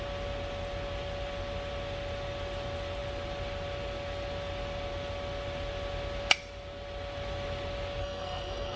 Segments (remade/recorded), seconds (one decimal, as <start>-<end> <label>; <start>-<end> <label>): 0.0-8.0 recorded; 8.0-8.8 remade